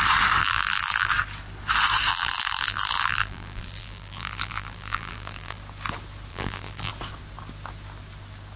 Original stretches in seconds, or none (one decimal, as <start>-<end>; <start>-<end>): 0.0-0.4; 1.1-2.1; 5.6-6.3; 6.9-8.6